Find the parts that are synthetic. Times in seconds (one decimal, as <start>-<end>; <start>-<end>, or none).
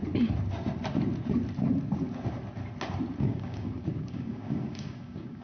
3.2-5.4